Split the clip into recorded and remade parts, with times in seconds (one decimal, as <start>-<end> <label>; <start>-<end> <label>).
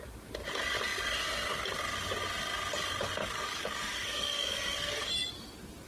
0.0-3.2 recorded; 3.2-5.1 remade; 5.1-5.9 recorded